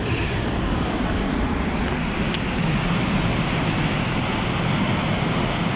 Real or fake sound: real